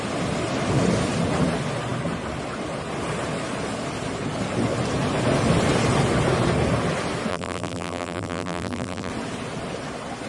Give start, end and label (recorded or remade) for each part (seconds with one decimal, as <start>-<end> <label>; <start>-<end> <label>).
0.0-7.3 recorded; 7.3-9.1 remade; 9.1-10.3 recorded